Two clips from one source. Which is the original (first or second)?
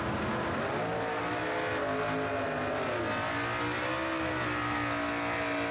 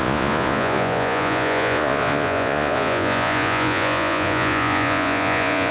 first